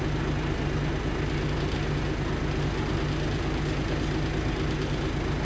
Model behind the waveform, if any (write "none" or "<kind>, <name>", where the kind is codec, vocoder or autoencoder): none